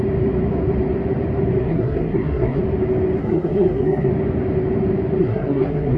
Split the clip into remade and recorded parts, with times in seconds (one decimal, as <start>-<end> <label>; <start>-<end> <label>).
0.0-1.6 recorded; 1.6-2.6 remade; 2.6-3.2 recorded; 3.2-4.1 remade; 4.1-5.2 recorded; 5.2-6.0 remade